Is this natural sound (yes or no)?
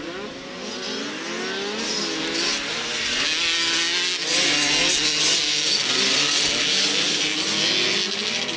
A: yes